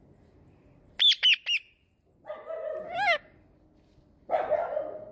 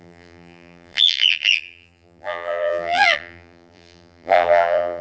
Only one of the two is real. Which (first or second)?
first